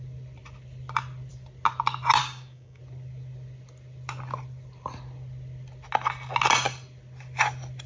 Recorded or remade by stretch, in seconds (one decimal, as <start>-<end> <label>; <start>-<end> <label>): 0.0-2.2 recorded; 2.2-2.8 remade; 2.8-7.9 recorded